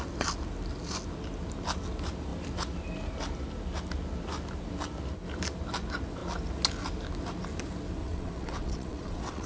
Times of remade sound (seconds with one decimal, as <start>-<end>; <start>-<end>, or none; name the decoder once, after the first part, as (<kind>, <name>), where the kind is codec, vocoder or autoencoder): 8.0-9.5 (vocoder, WaveNeXt)